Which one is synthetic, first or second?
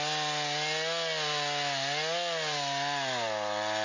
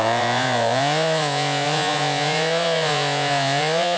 second